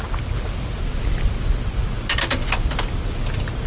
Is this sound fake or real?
real